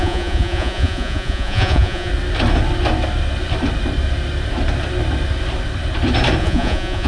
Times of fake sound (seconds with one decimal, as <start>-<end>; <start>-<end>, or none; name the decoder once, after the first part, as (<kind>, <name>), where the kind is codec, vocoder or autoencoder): 0.0-2.1 (vocoder, Vocos); 6.4-7.1